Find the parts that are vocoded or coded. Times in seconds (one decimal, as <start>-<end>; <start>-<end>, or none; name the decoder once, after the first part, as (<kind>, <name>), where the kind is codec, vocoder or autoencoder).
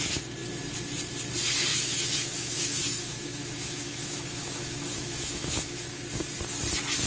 1.7-6.0 (autoencoder, DAC-VAE)